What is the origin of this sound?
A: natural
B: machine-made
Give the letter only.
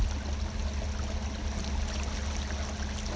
A